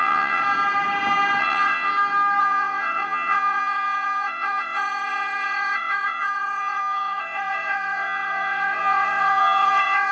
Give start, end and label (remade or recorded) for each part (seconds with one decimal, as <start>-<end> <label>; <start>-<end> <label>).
0.0-0.4 remade; 0.4-1.4 recorded; 1.4-1.9 remade; 1.9-2.4 recorded; 2.4-10.1 remade